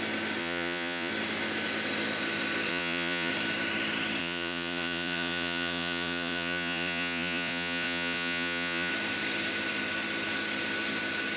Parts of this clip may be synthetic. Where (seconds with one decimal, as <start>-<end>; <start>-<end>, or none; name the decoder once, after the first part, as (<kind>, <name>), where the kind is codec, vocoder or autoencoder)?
0.4-1.1 (vocoder, Vocos); 2.7-3.3; 4.2-8.9